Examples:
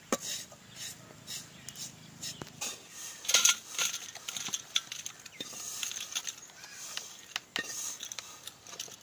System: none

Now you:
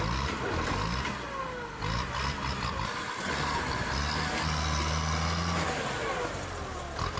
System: none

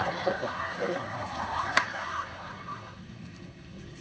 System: codec, SNAC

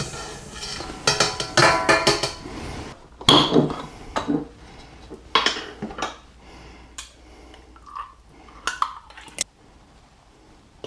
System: none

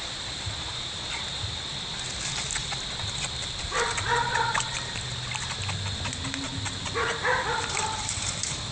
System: none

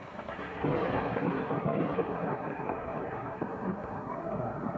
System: codec, SNAC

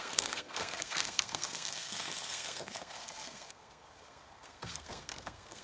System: codec, SNAC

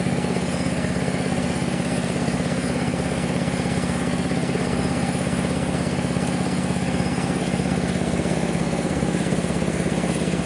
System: codec, SNAC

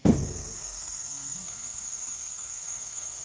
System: codec, SNAC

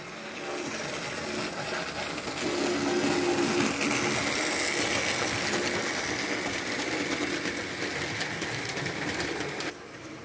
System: none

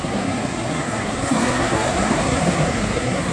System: codec, SNAC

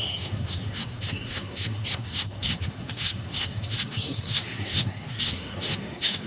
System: codec, SNAC